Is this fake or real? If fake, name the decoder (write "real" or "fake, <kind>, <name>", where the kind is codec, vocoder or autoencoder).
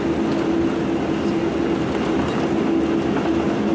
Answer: real